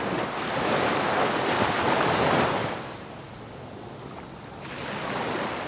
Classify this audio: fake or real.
real